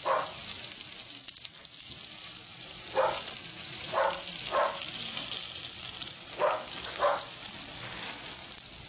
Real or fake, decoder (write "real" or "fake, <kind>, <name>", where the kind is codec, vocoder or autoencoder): real